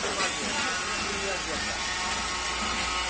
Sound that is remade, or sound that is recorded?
recorded